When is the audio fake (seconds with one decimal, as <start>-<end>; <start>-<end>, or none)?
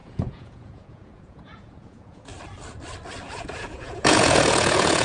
0.0-2.3; 3.3-5.0